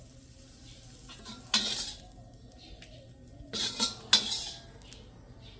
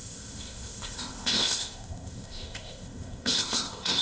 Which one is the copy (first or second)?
second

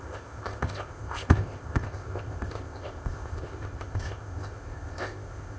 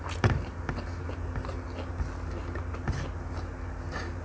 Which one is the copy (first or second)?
first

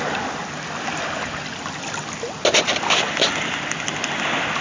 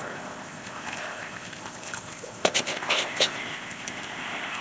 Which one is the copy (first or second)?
second